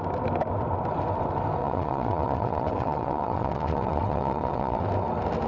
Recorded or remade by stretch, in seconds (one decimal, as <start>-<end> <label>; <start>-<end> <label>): 0.0-1.6 recorded; 1.6-4.9 remade; 4.9-5.5 recorded